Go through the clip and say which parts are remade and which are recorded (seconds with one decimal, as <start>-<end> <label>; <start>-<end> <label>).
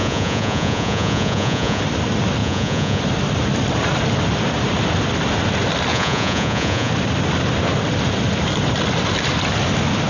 0.0-1.8 remade; 1.8-2.4 recorded; 2.4-3.0 remade; 3.0-5.9 recorded; 5.9-6.9 remade; 6.9-10.1 recorded